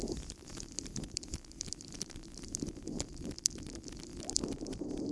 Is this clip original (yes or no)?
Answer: yes